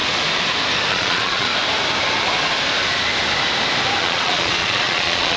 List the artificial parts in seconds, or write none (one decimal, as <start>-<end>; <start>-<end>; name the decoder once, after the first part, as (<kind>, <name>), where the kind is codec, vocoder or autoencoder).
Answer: 0.9-1.5 (vocoder, Vocos); 4.0-5.4